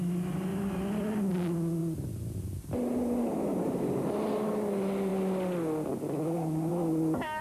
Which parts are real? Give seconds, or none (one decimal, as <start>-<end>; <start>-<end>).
0.0-7.4